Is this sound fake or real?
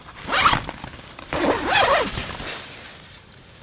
real